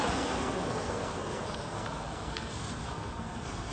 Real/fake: fake